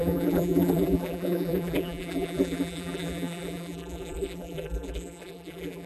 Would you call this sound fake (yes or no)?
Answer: yes